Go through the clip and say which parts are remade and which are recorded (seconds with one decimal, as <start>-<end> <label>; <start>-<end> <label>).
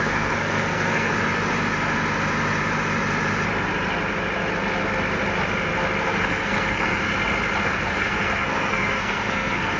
0.0-1.1 remade; 1.1-6.0 recorded; 6.0-7.1 remade; 7.1-7.6 recorded; 7.6-9.8 remade